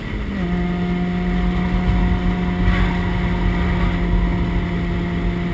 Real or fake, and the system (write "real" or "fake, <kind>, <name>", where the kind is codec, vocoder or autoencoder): real